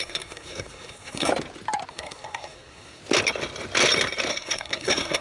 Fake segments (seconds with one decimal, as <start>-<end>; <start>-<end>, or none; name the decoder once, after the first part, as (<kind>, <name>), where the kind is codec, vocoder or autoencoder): 0.0-1.3 (codec, SNAC); 1.9-3.0; 4.3-5.2